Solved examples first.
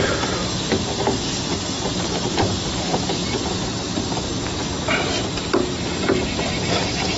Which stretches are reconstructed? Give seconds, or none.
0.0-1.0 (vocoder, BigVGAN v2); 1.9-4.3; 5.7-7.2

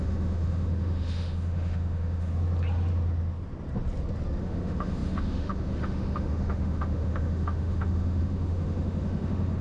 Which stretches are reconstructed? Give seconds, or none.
0.0-2.3 (autoencoder, DAC-VAE); 4.4-9.6